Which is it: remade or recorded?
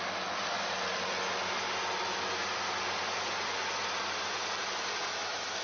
recorded